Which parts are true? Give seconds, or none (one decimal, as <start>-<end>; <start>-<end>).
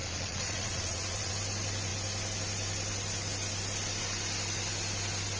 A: 1.3-5.4